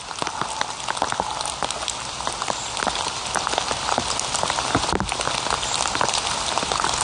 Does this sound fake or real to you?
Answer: real